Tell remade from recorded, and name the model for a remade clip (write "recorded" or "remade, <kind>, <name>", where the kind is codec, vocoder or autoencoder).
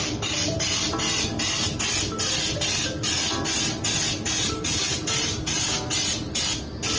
recorded